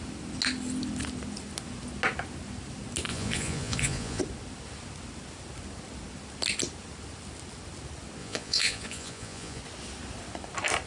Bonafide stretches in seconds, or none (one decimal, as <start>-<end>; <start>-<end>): 0.0-3.1; 4.2-8.2; 9.6-10.9